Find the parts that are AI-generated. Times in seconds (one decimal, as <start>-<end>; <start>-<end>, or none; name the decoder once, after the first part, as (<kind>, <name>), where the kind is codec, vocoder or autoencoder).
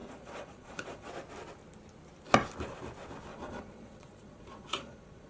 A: 0.0-1.1 (vocoder, Vocos); 3.3-5.3